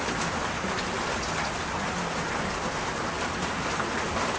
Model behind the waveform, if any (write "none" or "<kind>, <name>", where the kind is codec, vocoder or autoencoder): none